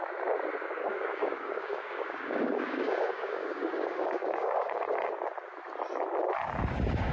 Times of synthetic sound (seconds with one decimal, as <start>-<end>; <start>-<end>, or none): 0.8-5.1